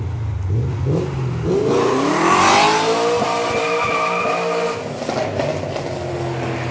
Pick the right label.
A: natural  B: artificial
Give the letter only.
A